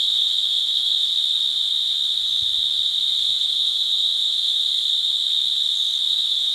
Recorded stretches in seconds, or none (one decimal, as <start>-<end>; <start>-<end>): 1.1-3.2; 4.6-6.1